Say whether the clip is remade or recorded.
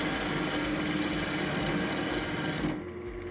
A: recorded